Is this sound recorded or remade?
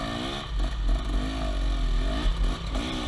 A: recorded